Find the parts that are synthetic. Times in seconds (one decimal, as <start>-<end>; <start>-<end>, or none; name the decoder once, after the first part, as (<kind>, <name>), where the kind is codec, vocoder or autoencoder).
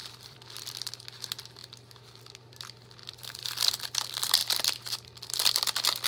0.0-0.7 (vocoder, BigVGAN v2)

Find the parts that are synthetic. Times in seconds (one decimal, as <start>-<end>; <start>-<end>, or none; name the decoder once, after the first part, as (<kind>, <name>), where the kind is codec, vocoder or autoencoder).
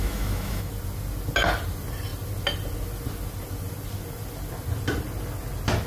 0.0-0.7 (autoencoder, DAC-VAE)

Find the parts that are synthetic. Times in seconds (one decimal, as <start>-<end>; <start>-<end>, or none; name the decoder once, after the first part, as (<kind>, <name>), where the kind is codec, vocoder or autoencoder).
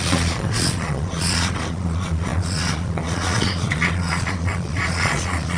0.0-5.6 (vocoder, Vocos)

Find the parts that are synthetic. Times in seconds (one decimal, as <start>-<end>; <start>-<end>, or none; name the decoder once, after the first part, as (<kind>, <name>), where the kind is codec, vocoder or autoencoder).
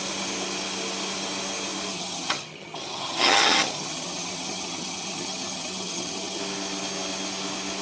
1.9-6.4 (vocoder, HiFi-GAN)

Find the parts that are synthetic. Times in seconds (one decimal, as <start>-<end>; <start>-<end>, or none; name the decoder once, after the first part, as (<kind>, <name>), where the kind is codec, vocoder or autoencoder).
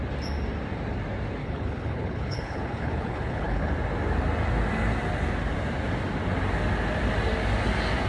1.4-3.7 (codec, HILCodec)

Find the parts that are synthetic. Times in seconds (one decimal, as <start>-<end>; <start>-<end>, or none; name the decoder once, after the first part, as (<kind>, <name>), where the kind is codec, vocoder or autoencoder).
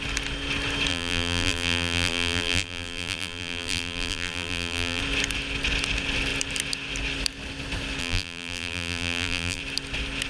0.9-5.0 (vocoder, BigVGAN v2); 8.0-9.6